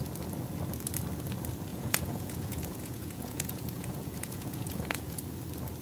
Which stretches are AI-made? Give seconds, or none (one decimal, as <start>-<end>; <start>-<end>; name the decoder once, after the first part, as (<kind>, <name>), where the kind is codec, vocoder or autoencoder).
1.7-5.2 (vocoder, Vocos)